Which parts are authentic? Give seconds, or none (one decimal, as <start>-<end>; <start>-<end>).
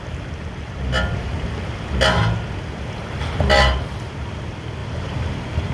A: 0.0-4.8; 5.3-5.7